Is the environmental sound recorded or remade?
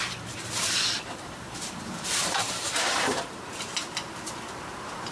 remade